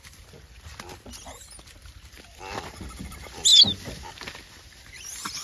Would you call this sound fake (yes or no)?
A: no